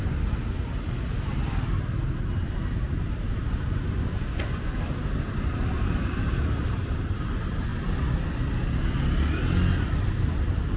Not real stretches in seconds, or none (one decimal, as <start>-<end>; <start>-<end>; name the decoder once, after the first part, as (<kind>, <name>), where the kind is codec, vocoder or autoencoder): none